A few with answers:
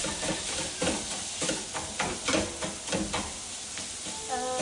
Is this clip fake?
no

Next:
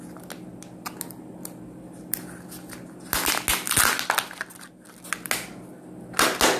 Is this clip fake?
no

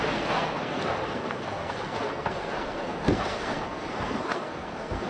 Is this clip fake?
yes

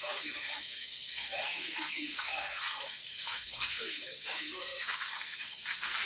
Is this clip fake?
yes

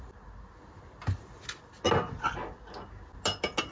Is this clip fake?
no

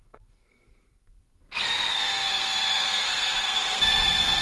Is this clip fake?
yes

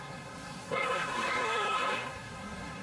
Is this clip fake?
yes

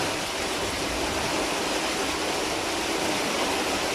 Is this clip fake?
no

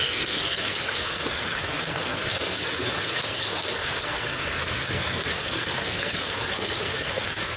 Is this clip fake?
yes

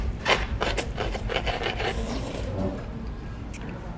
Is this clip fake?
no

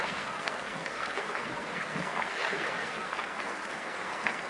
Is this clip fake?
yes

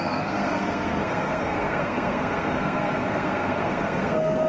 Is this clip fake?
yes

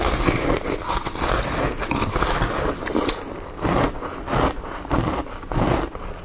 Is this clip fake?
no